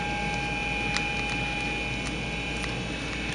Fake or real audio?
real